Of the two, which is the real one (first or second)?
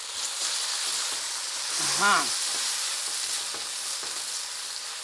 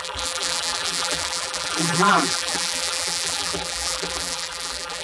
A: first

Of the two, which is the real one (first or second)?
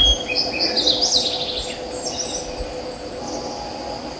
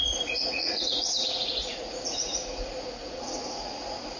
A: first